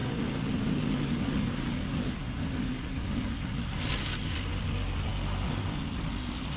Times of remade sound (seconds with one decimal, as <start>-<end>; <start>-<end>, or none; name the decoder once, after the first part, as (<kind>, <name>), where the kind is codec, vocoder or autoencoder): none